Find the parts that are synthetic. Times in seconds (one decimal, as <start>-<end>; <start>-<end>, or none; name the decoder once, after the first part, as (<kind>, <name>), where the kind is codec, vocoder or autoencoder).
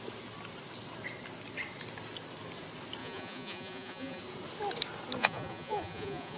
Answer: 3.0-4.2 (vocoder, Vocos); 5.2-6.4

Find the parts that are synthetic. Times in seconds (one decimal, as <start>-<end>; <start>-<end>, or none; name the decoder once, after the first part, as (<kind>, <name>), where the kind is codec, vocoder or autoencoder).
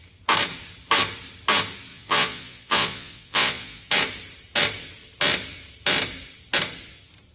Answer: 1.9-3.9 (vocoder, Vocos)